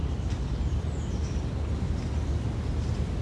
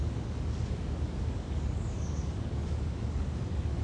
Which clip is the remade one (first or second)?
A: second